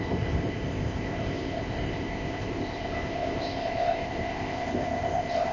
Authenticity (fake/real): fake